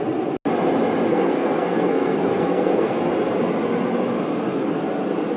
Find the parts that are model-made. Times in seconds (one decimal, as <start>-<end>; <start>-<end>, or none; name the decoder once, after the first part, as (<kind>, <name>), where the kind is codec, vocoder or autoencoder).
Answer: 1.1-3.0 (codec, SNAC)